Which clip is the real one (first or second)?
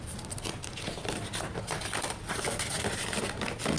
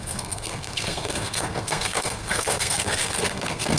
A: first